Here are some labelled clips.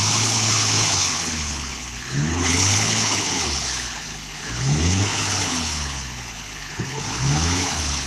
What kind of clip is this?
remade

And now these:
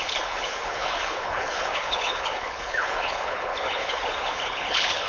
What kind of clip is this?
remade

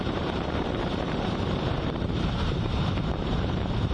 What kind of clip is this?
remade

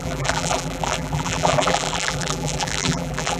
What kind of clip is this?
remade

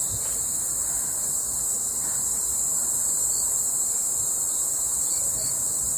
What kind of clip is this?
recorded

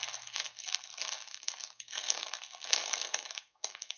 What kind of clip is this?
remade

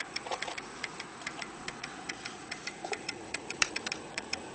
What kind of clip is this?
remade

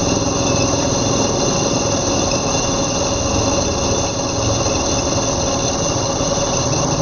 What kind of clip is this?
recorded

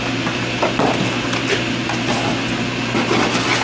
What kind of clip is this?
recorded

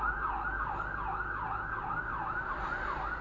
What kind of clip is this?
recorded